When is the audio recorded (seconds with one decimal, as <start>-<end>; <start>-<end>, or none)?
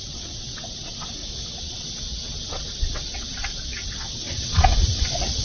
1.2-1.7